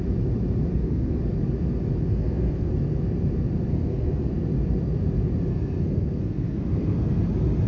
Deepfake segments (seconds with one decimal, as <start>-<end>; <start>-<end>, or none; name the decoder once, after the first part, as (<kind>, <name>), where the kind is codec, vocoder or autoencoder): 0.7-1.2 (codec, SNAC); 2.1-2.7; 3.7-4.3; 5.5-7.2